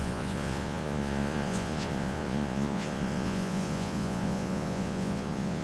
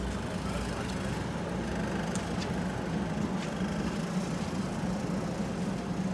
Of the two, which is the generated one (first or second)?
first